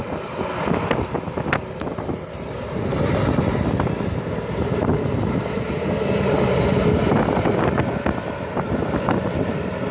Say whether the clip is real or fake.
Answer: real